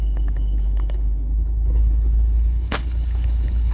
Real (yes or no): no